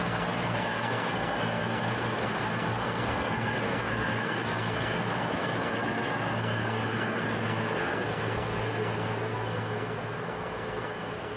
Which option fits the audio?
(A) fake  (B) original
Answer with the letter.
A